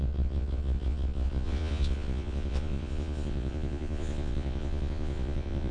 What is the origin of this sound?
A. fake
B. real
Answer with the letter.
A